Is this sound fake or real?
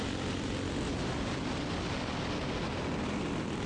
real